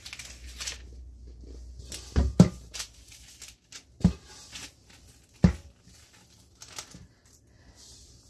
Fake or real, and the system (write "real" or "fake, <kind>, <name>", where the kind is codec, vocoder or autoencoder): real